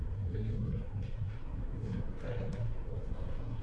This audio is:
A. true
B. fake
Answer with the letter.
B